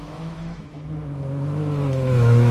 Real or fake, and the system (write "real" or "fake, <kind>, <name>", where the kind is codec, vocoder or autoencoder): fake, autoencoder, DAC-VAE